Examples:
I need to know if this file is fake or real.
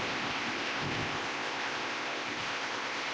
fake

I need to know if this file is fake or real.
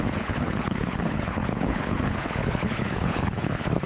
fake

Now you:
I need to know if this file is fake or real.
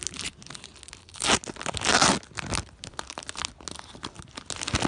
real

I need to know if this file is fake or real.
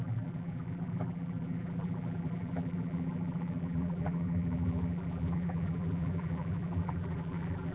fake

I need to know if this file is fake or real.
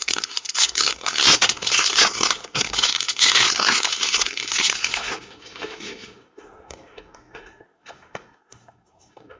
fake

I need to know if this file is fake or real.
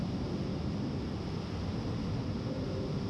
real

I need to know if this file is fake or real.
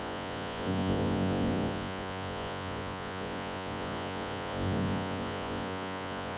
fake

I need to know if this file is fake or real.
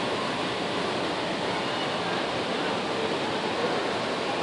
real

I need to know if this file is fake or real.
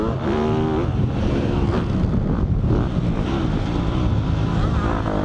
real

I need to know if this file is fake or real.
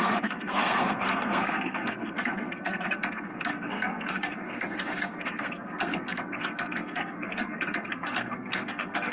fake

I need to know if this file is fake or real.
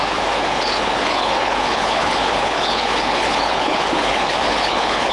fake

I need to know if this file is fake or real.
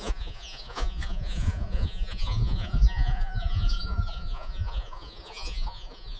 fake